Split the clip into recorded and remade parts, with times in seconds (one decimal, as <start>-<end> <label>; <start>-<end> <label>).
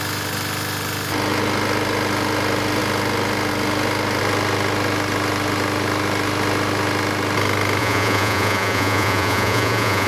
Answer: 0.0-7.8 recorded; 7.8-10.1 remade